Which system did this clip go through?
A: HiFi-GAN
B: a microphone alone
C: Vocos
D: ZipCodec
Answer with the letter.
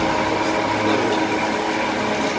B